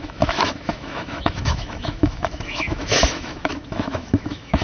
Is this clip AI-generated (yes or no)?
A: yes